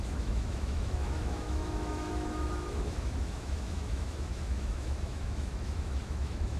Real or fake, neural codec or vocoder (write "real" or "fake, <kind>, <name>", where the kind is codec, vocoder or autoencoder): fake, autoencoder, DAC-VAE